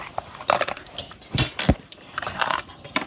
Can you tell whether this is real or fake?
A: real